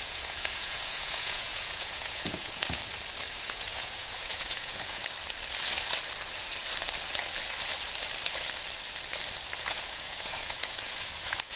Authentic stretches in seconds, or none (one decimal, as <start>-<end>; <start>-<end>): 2.8-3.4; 5.0-9.7